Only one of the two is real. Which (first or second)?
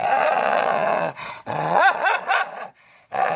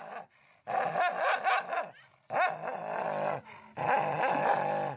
second